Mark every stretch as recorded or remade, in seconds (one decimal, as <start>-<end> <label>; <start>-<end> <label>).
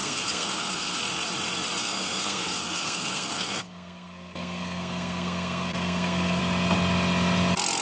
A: 0.0-1.0 remade; 1.0-1.8 recorded; 1.8-6.4 remade; 6.4-7.8 recorded